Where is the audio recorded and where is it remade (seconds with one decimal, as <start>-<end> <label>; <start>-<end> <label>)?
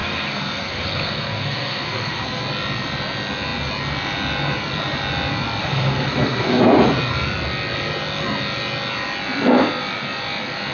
0.0-2.4 remade; 2.4-5.6 recorded; 5.6-6.6 remade; 6.6-10.7 recorded